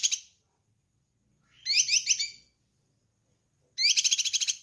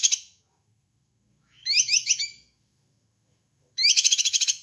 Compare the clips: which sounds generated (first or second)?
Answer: second